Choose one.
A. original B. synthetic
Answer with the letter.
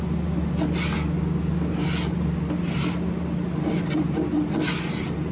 A